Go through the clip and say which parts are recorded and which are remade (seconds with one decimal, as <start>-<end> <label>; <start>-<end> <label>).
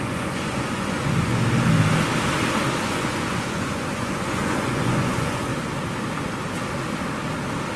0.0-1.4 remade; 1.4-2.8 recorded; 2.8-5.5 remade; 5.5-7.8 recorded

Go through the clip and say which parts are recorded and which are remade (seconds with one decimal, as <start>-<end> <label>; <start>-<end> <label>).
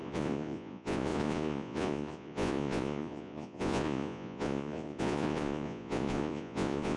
0.0-7.0 remade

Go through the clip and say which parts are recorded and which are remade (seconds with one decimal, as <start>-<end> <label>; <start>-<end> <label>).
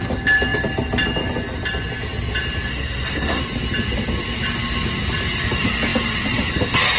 0.0-2.7 recorded; 2.7-3.4 remade; 3.4-7.0 recorded